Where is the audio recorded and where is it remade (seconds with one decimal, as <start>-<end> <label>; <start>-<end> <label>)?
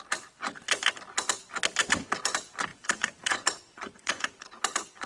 0.0-2.7 recorded; 2.7-5.1 remade